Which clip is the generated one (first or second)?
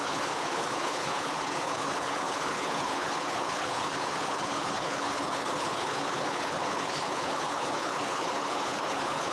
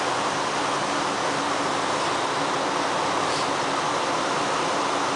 first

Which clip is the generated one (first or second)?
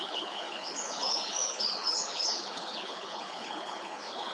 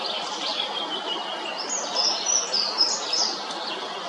first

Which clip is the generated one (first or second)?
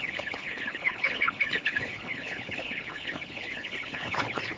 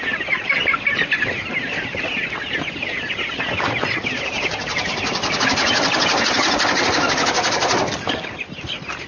first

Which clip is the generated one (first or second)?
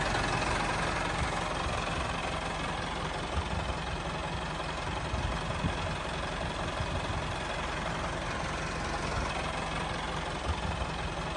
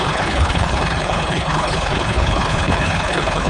second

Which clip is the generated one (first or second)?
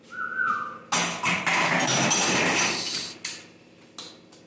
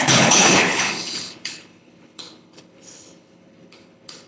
second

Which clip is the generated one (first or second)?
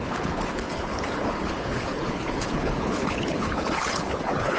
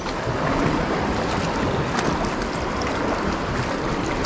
first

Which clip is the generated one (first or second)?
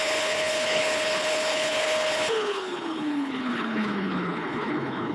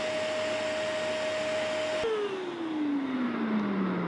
first